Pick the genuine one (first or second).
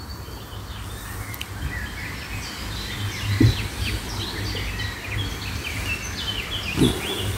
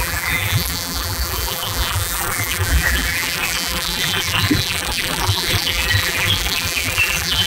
first